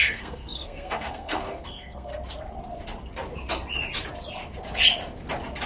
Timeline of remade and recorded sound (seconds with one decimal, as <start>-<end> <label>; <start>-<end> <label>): 0.0-2.1 remade; 2.1-5.7 recorded